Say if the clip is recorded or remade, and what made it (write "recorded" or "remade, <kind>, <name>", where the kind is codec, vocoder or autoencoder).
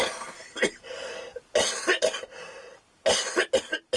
recorded